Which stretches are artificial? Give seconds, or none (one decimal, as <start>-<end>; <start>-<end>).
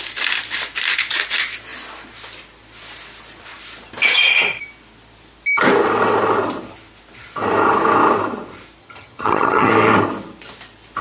8.8-9.7